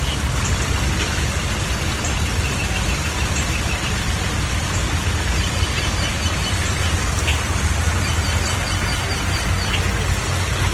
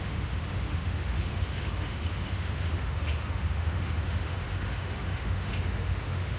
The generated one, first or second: second